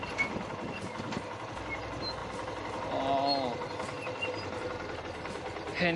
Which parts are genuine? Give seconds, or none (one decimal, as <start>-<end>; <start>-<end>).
0.0-6.0